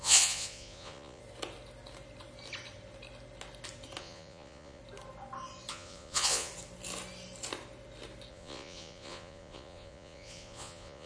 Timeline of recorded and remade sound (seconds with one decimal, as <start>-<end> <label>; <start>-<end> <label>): 0.0-1.2 remade; 1.2-4.0 recorded; 4.0-4.8 remade; 4.8-5.7 recorded; 5.7-6.5 remade; 6.5-8.3 recorded; 8.3-11.1 remade